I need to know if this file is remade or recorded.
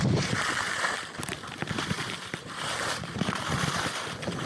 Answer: recorded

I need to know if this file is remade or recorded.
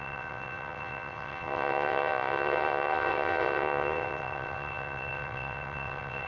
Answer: remade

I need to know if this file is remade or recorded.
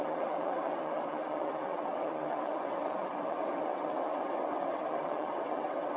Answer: remade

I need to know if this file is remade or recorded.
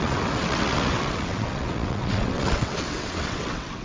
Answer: remade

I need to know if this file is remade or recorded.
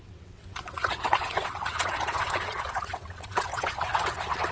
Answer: remade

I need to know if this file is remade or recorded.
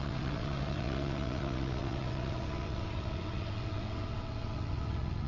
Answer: remade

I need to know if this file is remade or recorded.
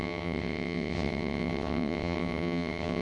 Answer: remade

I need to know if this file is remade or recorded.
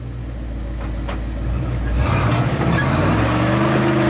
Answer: recorded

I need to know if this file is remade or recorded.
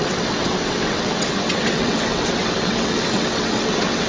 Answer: remade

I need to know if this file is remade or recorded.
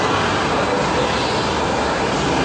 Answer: recorded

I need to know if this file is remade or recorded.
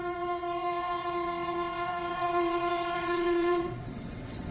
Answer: remade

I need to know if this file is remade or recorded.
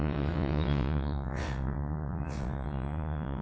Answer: remade